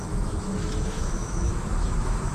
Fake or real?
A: fake